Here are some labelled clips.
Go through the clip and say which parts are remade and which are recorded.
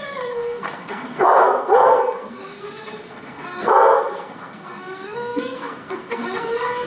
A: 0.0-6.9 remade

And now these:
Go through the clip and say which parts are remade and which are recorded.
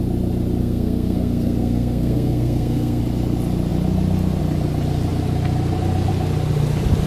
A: 0.0-0.6 recorded; 0.6-3.0 remade; 3.0-7.1 recorded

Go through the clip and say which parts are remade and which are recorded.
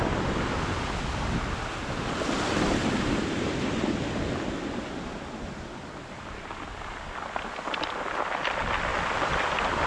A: 0.0-9.9 recorded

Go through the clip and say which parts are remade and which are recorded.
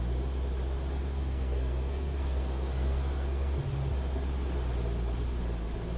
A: 0.0-1.0 recorded; 1.0-3.6 remade; 3.6-6.0 recorded